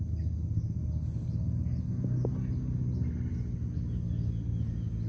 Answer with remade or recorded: recorded